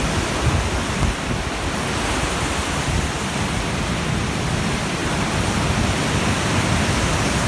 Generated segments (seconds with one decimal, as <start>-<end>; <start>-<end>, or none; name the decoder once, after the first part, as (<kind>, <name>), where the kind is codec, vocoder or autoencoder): 5.0-6.5 (vocoder, BigVGAN v2)